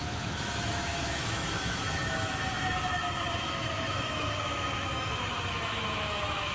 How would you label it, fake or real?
fake